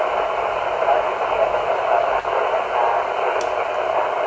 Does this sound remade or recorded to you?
recorded